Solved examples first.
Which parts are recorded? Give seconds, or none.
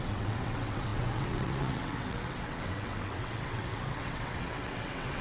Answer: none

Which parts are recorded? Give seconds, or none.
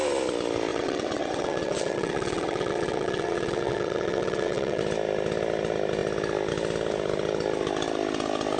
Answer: 0.0-0.7; 4.8-8.6